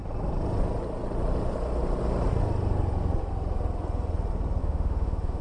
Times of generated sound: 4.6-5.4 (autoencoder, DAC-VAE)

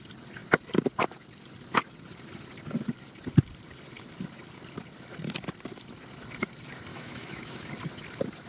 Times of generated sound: 6.9-7.7 (autoencoder, DAC-VAE)

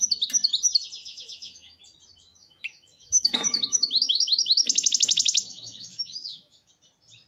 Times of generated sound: 1.0-1.8 (autoencoder, DAC-VAE); 2.3-6.7